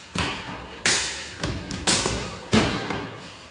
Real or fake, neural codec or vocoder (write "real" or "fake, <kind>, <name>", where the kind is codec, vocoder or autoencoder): fake, codec, SNAC